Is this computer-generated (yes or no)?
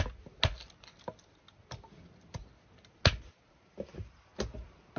no